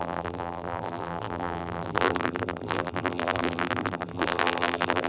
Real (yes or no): no